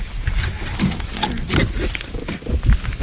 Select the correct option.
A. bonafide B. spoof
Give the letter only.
A